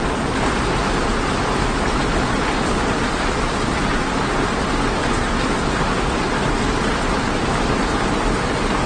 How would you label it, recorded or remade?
recorded